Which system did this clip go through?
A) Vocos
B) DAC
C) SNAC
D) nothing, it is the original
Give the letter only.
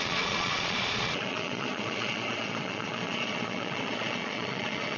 A